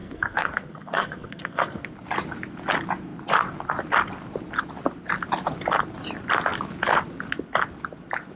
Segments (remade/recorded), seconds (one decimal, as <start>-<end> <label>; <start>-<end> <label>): 0.0-1.9 remade; 1.9-8.4 recorded